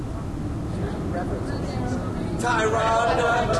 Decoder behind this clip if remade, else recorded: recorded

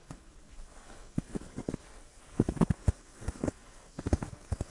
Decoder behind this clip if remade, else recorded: remade, codec, SNAC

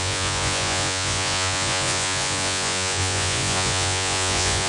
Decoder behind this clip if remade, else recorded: remade, vocoder, Vocos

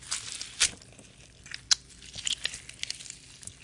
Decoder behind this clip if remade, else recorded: recorded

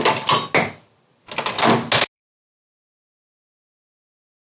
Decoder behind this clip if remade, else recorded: recorded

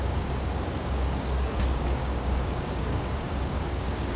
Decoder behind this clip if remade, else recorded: remade, codec, DAC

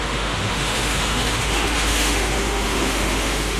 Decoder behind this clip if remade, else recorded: remade, autoencoder, DAC-VAE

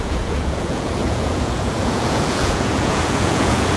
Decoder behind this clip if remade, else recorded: remade, vocoder, Vocos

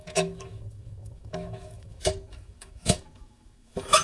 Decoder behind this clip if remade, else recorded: remade, autoencoder, DAC-VAE